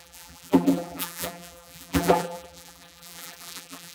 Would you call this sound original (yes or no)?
no